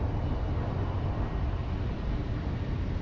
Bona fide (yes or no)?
no